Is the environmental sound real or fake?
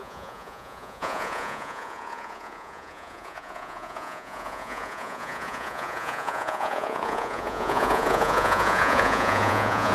fake